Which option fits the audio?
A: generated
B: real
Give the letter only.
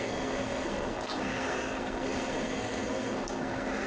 A